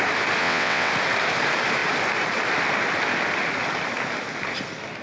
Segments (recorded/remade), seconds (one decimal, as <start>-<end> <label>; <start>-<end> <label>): 0.0-0.4 recorded; 0.4-0.9 remade; 0.9-5.0 recorded